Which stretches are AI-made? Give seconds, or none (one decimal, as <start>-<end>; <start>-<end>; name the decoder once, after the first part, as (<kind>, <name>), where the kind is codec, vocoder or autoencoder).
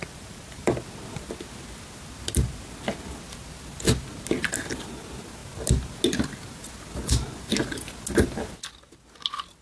none